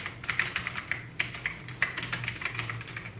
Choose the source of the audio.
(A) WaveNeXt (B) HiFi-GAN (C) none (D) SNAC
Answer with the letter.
C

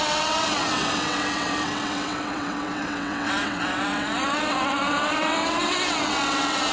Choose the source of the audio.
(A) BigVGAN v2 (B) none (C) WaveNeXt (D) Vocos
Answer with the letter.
C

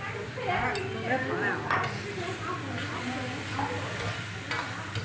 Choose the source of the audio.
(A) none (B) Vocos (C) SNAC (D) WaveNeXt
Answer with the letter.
A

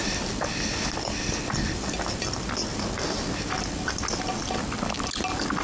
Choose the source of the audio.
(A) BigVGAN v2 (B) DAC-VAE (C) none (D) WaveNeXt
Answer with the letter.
C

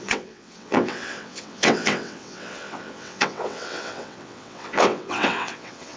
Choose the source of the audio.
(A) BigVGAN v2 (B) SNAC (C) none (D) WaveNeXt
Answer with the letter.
D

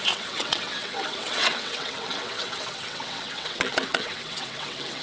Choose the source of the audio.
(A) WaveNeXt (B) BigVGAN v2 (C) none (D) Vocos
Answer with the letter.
A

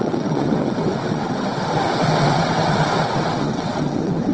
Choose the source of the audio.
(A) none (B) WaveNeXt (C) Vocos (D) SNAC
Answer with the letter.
B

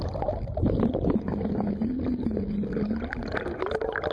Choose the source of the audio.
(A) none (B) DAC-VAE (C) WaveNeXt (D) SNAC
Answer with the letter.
A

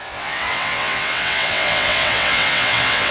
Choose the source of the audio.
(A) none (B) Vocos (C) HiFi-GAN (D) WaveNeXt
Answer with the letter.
D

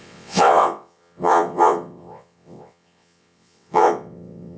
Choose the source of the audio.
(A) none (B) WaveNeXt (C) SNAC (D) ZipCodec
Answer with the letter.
B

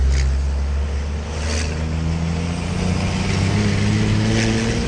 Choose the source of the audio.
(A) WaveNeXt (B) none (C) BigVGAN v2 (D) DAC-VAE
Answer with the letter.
B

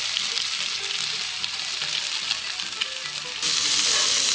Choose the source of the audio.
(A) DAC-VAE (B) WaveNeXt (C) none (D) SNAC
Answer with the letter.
C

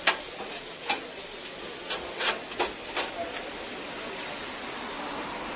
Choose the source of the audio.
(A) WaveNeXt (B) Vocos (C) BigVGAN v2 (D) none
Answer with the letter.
D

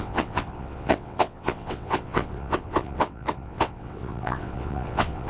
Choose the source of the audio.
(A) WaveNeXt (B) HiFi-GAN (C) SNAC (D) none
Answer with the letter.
A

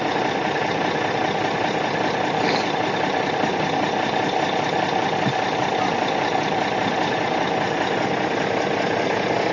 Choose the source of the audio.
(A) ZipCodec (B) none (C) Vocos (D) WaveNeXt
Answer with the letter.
B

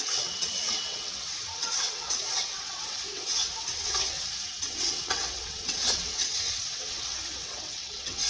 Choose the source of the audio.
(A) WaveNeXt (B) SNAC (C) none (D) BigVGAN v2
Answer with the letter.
A